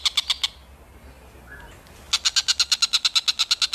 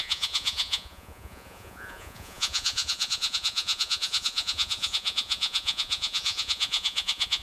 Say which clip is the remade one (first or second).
second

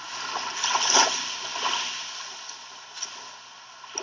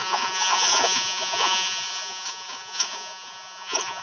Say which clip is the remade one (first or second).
second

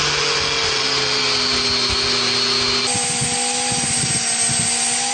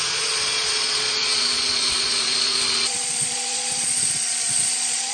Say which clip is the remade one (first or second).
second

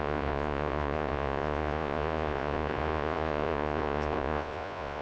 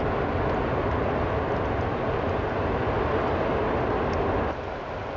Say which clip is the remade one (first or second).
first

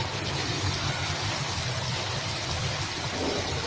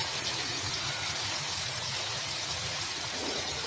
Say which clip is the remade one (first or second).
second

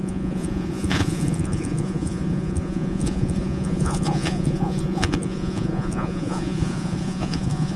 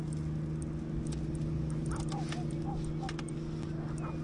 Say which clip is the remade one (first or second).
first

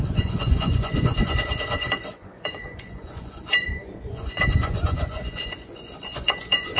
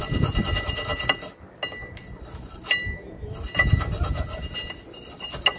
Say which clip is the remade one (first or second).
first